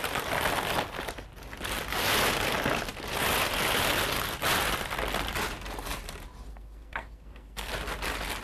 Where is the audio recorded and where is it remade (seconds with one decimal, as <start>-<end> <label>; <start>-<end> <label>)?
0.0-6.5 recorded; 6.5-7.7 remade; 7.7-8.4 recorded